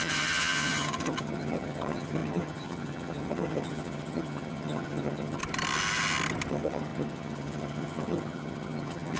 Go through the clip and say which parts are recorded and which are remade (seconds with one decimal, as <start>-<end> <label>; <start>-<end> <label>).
0.0-5.4 remade; 5.4-6.5 recorded; 6.5-9.2 remade